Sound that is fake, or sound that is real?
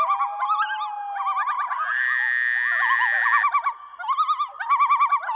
real